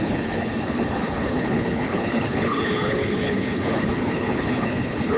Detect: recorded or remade remade